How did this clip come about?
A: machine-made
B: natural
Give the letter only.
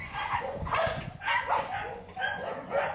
A